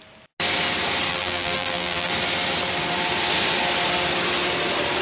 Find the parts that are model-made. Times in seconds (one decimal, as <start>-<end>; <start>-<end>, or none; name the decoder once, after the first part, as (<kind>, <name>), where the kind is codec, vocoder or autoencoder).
1.1-2.1 (vocoder, BigVGAN v2)